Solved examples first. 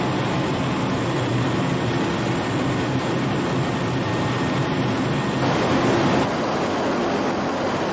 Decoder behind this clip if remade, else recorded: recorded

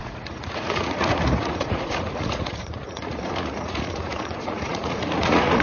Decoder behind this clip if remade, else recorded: remade, vocoder, Vocos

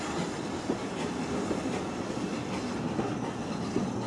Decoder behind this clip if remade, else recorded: recorded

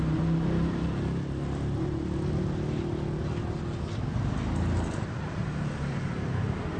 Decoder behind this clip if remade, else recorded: recorded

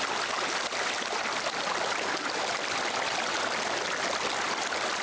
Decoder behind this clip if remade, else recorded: recorded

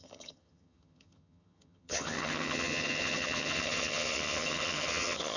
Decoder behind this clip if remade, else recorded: remade, vocoder, HiFi-GAN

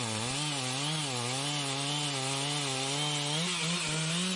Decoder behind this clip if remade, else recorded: recorded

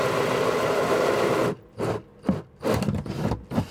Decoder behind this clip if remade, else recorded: recorded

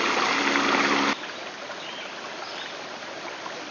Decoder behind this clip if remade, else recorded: recorded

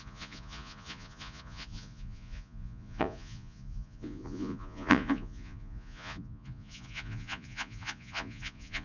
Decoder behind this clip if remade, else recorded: remade, vocoder, Vocos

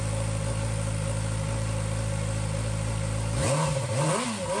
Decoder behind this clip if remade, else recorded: recorded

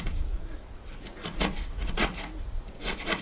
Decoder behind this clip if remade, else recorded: remade, vocoder, Vocos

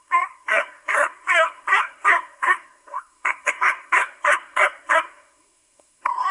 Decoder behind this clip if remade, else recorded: remade, codec, SNAC